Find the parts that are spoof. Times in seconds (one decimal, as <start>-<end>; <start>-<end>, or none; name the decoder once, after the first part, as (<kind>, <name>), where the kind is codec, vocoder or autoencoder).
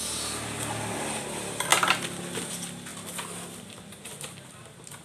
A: none